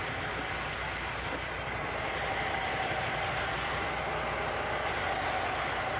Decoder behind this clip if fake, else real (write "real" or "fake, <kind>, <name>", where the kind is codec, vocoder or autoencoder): real